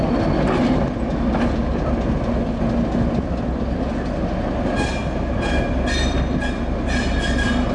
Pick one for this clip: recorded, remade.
recorded